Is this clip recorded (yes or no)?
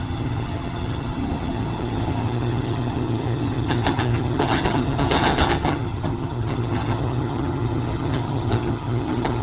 no